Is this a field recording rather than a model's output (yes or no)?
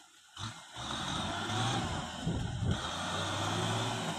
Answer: yes